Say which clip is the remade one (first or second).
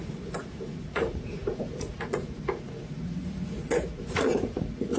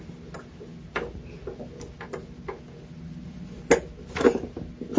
first